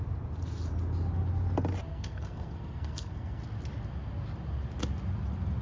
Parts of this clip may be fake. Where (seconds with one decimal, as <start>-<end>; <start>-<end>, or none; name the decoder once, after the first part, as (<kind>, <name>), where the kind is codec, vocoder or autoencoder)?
1.9-3.4 (codec, SNAC)